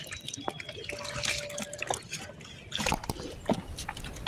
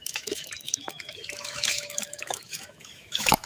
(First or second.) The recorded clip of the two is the first